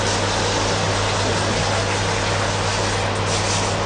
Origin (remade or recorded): recorded